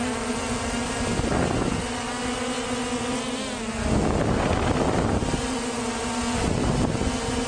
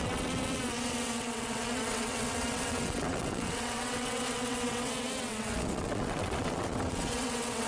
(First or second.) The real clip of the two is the first